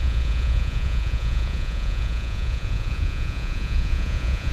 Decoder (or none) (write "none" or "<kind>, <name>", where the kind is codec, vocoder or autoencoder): vocoder, Vocos